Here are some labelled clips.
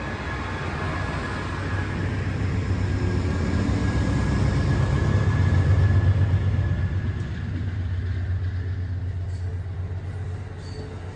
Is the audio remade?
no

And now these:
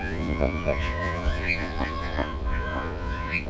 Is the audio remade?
yes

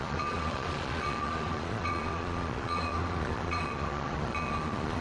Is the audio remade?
yes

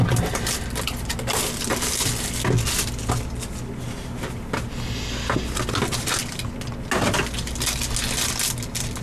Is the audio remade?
no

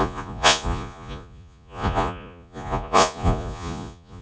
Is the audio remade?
yes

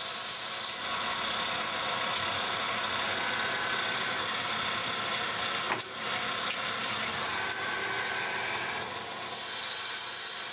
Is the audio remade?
no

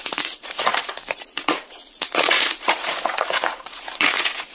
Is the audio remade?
yes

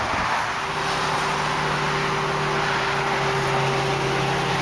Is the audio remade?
no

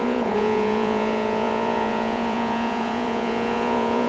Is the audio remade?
yes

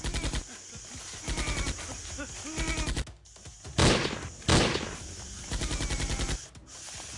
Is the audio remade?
no